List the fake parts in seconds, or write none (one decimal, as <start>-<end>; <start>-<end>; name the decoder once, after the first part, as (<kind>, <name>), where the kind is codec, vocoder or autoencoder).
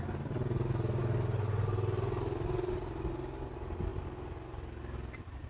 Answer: none